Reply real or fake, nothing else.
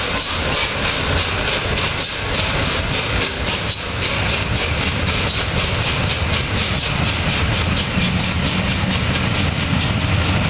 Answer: real